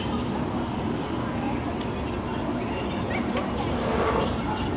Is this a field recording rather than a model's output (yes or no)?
yes